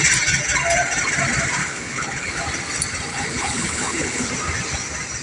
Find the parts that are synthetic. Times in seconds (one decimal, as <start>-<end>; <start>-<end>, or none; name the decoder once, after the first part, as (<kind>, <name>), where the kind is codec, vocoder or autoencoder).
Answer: 1.6-2.4 (codec, HILCodec); 3.1-4.3